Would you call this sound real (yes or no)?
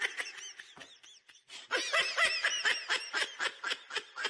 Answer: yes